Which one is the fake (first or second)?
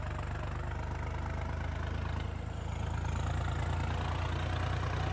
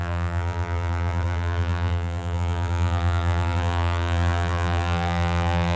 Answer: second